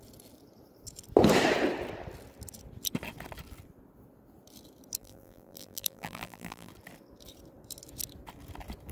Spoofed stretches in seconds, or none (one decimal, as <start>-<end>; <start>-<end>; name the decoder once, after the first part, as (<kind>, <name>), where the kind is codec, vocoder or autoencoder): 5.0-6.7 (vocoder, BigVGAN v2)

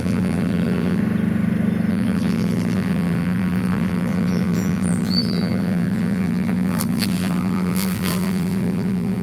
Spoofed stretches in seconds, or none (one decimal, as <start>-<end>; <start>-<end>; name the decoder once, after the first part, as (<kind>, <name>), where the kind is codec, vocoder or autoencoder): 0.0-1.0 (vocoder, BigVGAN v2); 1.9-9.2

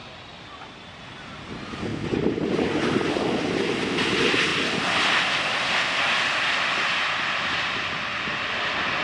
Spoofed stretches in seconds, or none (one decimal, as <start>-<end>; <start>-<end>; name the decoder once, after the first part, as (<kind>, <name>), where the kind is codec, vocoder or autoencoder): none

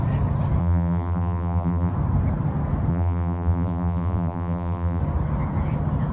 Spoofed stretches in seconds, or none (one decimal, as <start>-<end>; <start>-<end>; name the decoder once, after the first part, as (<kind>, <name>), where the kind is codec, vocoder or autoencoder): 0.6-1.9 (vocoder, BigVGAN v2); 2.9-5.0

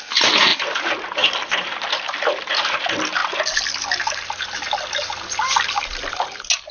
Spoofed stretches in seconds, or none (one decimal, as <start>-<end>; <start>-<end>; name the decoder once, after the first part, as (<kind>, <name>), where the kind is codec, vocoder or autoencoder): none

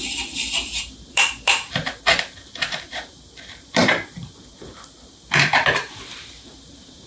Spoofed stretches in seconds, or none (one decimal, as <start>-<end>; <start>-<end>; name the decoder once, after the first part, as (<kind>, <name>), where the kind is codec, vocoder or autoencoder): 0.0-7.1 (vocoder, BigVGAN v2)

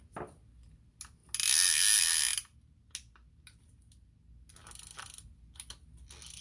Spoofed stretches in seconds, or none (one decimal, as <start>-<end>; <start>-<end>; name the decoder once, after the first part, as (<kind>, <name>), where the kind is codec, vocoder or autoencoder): none

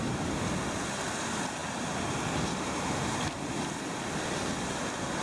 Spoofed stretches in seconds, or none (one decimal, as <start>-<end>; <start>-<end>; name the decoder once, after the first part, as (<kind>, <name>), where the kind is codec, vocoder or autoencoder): none